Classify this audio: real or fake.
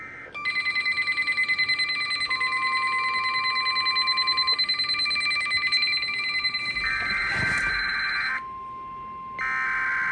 real